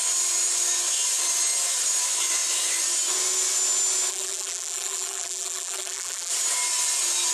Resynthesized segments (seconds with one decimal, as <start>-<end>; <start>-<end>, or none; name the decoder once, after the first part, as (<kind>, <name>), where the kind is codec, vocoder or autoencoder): 4.1-6.3 (vocoder, BigVGAN v2)